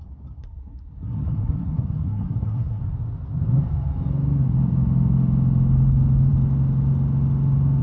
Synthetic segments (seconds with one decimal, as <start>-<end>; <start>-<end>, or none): 0.4-2.8